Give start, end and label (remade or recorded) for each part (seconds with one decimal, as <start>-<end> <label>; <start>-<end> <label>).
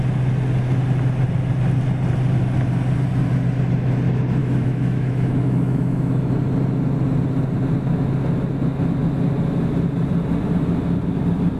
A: 0.0-4.4 recorded; 4.4-6.3 remade; 6.3-11.6 recorded